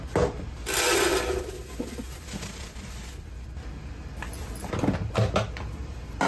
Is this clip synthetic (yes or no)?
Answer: no